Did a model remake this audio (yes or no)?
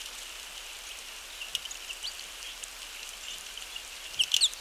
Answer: no